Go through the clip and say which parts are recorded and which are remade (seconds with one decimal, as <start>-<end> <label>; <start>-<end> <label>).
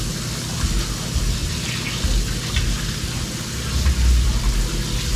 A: 0.0-5.2 recorded